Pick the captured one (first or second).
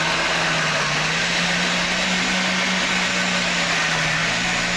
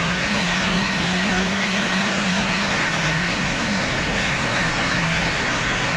first